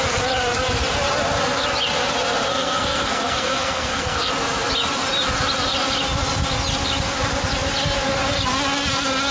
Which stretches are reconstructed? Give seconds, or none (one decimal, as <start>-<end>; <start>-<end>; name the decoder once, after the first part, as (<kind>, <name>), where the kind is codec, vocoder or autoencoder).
2.5-4.3 (codec, SNAC)